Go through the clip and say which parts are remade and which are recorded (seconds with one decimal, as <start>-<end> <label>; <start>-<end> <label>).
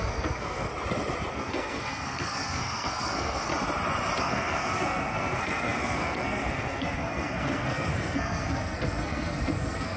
0.0-0.7 remade; 0.7-1.3 recorded; 1.3-3.5 remade; 3.5-4.2 recorded; 4.2-10.0 remade